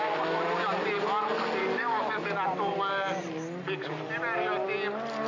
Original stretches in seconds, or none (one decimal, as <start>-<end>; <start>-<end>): 0.0-1.6; 2.3-5.3